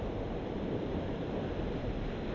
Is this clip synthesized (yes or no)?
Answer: no